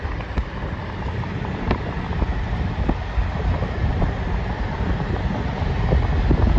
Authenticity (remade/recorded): recorded